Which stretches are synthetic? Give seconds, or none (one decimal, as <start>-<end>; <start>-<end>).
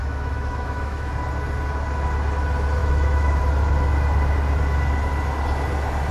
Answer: 0.0-1.1; 2.8-3.4